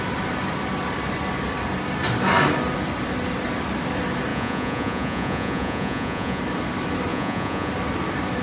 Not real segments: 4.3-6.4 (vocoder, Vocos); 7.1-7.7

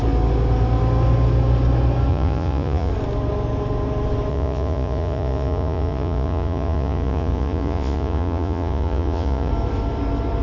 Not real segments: 2.1-2.9 (vocoder, Vocos); 4.3-9.5

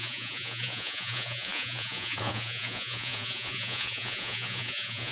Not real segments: 0.0-5.1 (vocoder, Vocos)

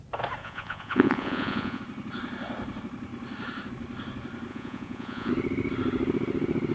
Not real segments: 0.4-1.8 (vocoder, Vocos); 4.5-5.3